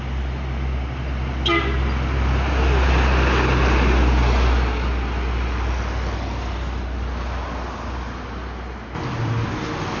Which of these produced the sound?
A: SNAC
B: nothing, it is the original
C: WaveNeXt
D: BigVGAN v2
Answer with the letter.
B